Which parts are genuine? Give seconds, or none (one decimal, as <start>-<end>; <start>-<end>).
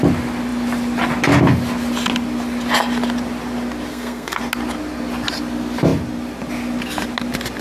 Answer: 0.0-3.9; 4.4-7.6